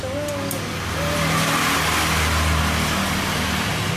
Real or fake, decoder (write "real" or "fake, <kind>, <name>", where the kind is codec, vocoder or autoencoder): real